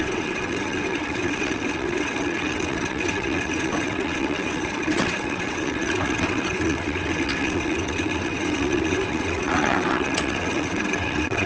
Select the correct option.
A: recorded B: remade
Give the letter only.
B